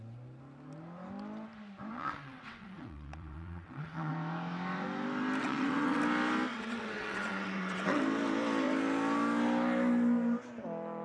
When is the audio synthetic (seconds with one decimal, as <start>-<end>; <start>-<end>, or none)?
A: 1.9-4.1; 5.4-6.0; 6.5-8.0